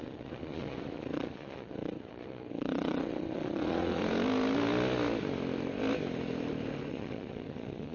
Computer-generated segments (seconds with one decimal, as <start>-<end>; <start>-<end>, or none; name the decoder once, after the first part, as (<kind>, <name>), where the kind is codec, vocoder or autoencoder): 0.0-4.0 (vocoder, Vocos); 6.9-7.9